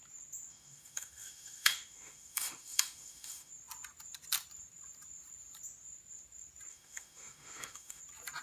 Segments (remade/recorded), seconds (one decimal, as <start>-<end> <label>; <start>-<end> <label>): 0.0-0.5 recorded; 0.5-3.5 remade; 3.5-6.7 recorded; 6.7-8.0 remade; 8.0-8.4 recorded